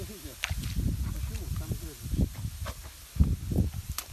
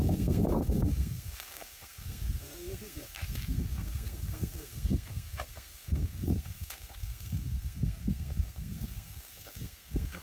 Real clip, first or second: first